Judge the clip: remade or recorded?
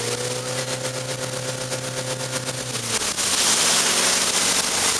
recorded